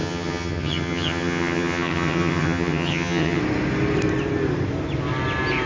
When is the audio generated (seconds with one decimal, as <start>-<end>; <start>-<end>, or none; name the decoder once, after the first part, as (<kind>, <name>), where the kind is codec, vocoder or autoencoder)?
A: 0.0-3.4 (vocoder, HiFi-GAN)

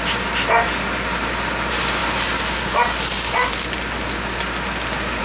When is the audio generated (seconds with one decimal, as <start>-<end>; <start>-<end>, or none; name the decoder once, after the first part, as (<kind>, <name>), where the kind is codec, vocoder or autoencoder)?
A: none

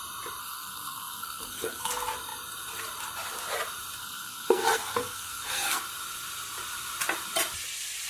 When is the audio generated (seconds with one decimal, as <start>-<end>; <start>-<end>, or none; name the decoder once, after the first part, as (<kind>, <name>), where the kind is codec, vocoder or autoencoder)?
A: 0.4-1.9 (codec, SNAC); 4.0-5.8

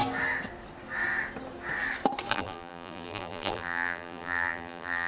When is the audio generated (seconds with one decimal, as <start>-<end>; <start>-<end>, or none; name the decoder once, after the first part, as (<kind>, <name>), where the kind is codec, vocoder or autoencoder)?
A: 2.3-5.1 (vocoder, BigVGAN v2)

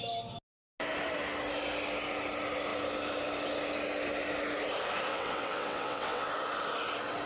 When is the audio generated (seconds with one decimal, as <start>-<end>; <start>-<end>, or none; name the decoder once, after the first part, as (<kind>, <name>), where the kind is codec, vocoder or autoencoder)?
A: 5.1-6.3 (vocoder, WaveNeXt)

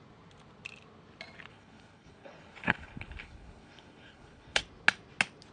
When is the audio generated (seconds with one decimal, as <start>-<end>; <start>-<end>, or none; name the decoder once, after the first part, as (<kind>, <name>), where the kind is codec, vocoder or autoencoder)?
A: 1.5-4.6 (codec, HILCodec)

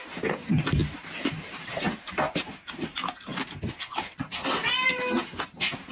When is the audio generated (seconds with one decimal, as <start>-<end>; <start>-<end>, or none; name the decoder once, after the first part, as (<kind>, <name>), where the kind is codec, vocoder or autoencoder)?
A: 0.8-1.5 (vocoder, BigVGAN v2); 3.3-4.9

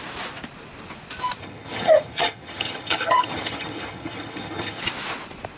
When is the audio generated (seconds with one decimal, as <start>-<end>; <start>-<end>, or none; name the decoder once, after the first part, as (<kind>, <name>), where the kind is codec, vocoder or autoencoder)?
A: 1.4-4.8 (vocoder, HiFi-GAN)